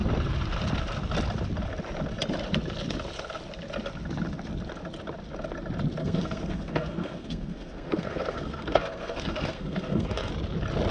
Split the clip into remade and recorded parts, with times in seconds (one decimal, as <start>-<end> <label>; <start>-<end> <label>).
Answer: 0.0-6.0 recorded; 6.0-10.3 remade; 10.3-10.9 recorded